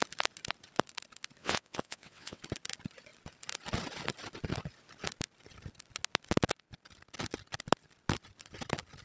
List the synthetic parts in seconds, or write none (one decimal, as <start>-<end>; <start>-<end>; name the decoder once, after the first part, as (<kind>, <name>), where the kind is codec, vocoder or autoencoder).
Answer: 1.4-2.4 (vocoder, WaveNeXt)